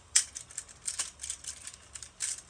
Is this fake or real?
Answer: real